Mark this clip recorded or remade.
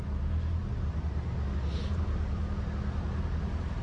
recorded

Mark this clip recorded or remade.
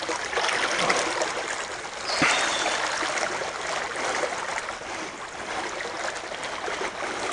recorded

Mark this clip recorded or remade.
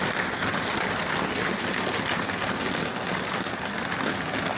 recorded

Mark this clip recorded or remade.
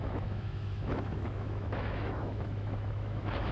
remade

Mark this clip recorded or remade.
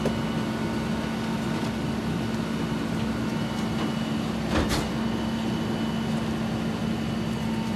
recorded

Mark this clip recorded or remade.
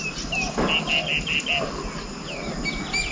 recorded